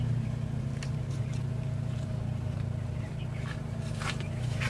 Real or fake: fake